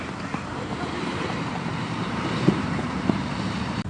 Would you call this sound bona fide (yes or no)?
no